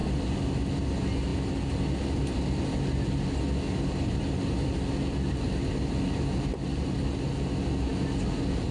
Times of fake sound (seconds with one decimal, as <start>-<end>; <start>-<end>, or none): none